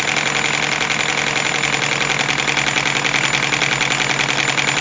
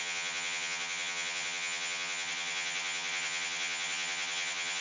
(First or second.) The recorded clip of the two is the first